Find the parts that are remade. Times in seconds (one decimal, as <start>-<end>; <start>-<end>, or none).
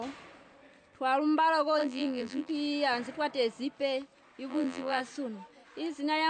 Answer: 1.8-2.5; 4.5-5.0